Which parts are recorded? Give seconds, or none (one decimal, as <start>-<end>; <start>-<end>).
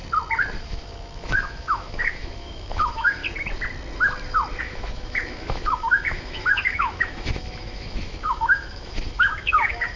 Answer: 0.0-0.6; 3.2-4.6